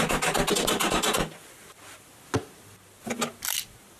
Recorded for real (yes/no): yes